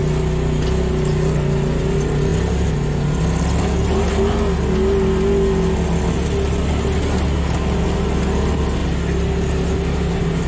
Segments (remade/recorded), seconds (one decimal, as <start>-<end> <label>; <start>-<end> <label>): 0.0-10.5 recorded